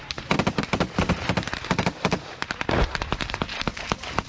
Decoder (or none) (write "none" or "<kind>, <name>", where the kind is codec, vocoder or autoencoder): vocoder, BigVGAN v2